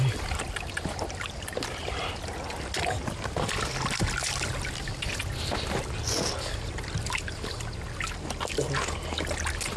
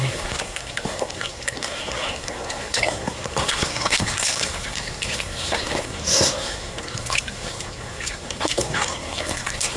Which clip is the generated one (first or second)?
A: second